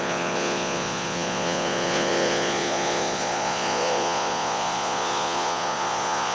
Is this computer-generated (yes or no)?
yes